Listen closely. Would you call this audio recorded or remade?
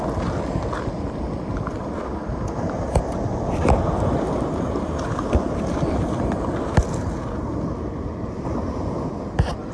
recorded